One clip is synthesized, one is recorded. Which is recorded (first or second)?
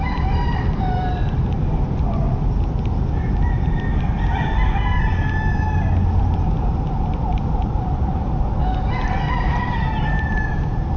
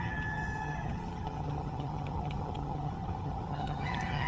first